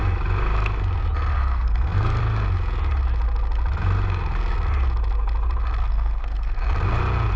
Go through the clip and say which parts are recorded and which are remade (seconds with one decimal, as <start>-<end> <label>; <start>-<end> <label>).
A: 0.0-1.3 recorded; 1.3-2.2 remade; 2.2-5.8 recorded; 5.8-6.6 remade; 6.6-7.4 recorded